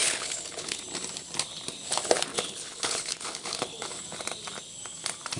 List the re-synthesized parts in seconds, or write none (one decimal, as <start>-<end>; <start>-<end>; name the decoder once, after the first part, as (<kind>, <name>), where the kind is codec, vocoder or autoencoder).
0.0-0.8 (codec, HILCodec); 2.3-4.0